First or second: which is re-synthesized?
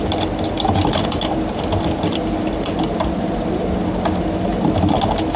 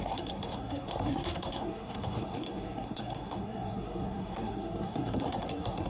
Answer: second